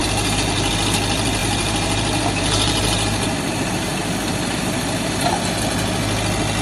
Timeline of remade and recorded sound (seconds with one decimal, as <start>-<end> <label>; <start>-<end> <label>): 0.0-0.7 remade; 0.7-1.4 recorded; 1.4-5.4 remade; 5.4-6.6 recorded